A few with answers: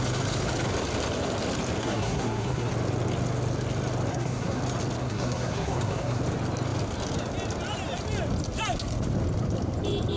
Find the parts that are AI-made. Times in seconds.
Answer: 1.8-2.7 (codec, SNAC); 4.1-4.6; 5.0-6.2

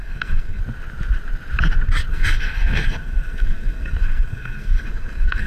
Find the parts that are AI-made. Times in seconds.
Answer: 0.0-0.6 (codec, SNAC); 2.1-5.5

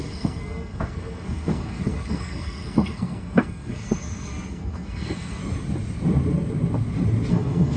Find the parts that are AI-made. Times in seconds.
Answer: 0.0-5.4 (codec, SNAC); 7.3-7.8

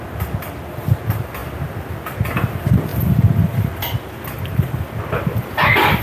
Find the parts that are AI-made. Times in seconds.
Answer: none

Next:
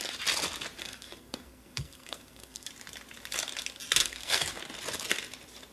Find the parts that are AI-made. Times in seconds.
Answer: 0.8-2.7 (codec, SNAC); 4.0-4.6

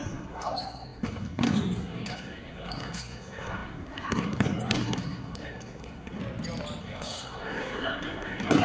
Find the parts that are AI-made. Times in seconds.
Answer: 0.0-6.2 (codec, SNAC); 6.8-8.6

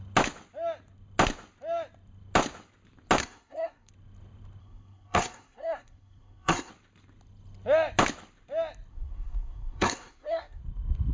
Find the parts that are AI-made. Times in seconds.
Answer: 3.2-3.9 (codec, SNAC); 4.6-6.7; 8.9-10.6

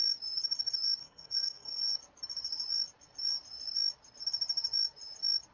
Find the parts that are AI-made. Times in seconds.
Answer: 1.0-1.8 (codec, SNAC)